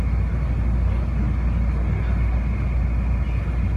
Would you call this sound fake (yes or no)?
no